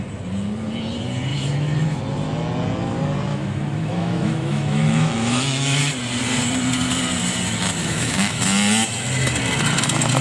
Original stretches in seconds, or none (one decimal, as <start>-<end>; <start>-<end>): 0.0-1.3; 2.0-3.3; 5.8-7.8; 8.4-10.2